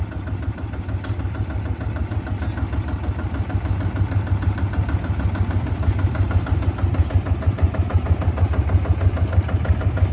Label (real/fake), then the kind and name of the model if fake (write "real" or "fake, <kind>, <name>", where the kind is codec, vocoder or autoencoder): real